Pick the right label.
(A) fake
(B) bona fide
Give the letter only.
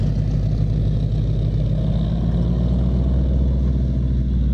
B